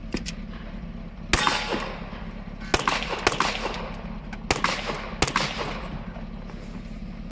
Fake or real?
real